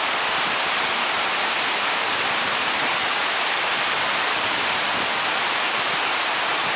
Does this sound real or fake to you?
real